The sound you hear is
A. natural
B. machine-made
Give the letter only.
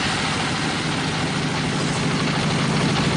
A